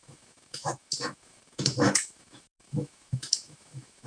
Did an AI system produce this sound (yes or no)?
yes